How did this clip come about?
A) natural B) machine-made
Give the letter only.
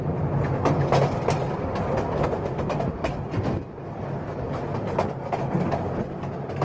A